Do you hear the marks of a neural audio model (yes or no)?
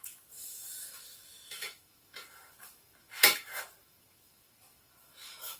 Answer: yes